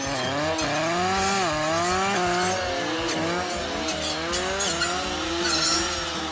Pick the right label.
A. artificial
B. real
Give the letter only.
B